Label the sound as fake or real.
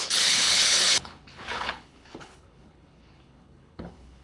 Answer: fake